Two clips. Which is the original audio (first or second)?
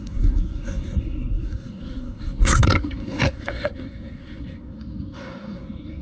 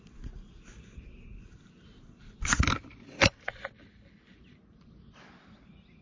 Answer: second